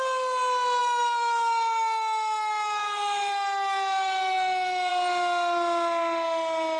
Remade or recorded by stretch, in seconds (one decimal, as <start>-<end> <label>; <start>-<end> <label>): 0.0-0.8 recorded; 0.8-4.9 remade; 4.9-6.8 recorded